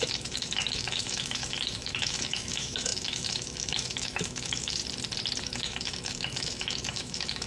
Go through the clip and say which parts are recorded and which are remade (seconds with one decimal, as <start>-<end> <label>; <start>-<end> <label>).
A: 0.0-4.8 remade; 4.8-5.4 recorded; 5.4-7.5 remade